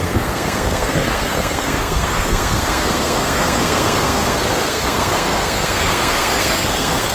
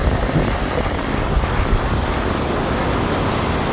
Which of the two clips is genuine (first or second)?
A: second